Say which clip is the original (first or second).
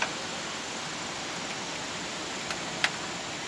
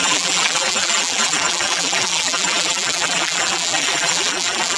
first